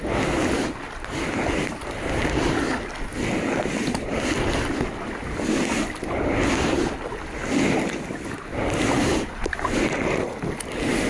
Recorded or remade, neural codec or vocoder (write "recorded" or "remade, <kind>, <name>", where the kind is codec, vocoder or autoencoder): recorded